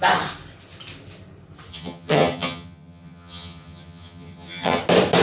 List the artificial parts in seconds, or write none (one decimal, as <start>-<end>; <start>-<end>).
1.7-4.8